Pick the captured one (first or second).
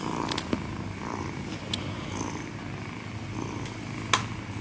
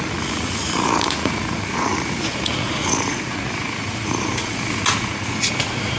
first